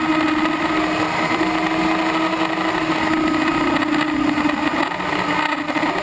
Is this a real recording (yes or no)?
yes